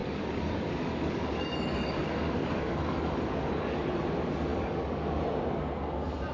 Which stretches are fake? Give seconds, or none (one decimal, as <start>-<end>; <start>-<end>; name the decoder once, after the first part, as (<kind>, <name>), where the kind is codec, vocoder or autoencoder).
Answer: 0.0-3.8 (codec, DAC); 4.5-5.2